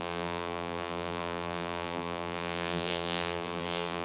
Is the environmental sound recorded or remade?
remade